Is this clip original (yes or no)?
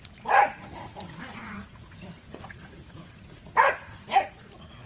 no